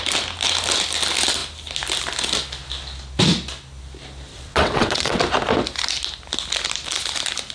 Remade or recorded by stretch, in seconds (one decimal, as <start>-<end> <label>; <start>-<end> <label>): 0.0-4.3 recorded; 4.3-5.2 remade; 5.2-7.5 recorded